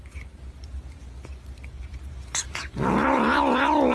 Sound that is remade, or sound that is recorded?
recorded